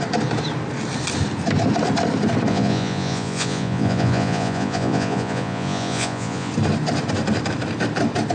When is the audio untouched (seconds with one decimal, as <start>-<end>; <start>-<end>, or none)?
0.0-2.5; 6.5-8.3